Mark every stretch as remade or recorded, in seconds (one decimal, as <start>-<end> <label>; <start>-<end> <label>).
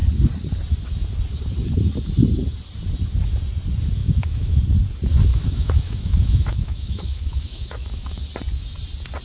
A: 0.0-4.0 recorded; 4.0-4.6 remade; 4.6-5.3 recorded; 5.3-8.2 remade; 8.2-9.2 recorded